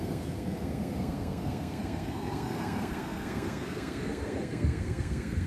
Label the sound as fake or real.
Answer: fake